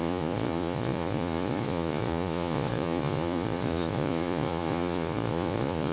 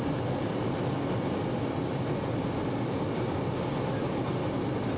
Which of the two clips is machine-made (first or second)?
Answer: first